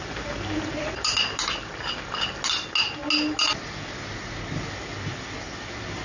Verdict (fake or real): real